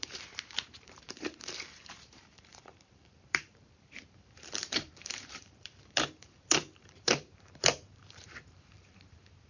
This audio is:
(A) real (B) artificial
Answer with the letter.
B